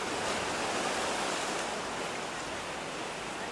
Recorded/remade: recorded